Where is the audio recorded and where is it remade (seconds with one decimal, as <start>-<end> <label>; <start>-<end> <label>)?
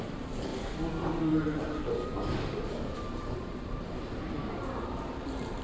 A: 0.0-0.5 remade; 0.5-1.3 recorded; 1.3-5.6 remade